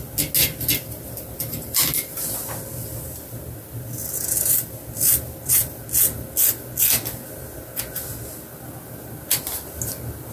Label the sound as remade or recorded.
recorded